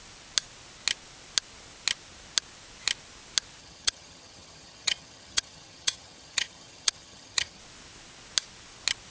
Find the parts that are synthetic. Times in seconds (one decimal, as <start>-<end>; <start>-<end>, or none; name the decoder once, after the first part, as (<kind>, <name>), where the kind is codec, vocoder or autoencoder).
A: 3.6-7.6 (vocoder, HiFi-GAN)